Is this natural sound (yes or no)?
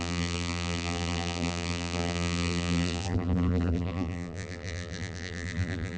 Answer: no